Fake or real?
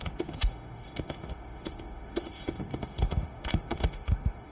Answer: fake